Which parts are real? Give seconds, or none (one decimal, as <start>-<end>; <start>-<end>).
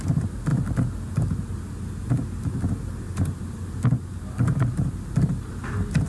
0.0-6.1